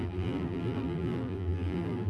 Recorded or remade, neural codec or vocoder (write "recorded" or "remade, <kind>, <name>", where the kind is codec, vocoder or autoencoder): remade, vocoder, BigVGAN v2